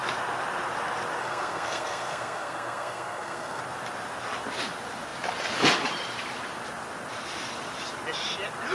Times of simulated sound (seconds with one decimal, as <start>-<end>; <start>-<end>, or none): 1.2-3.6